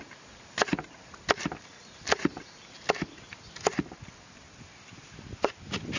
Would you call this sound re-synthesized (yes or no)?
no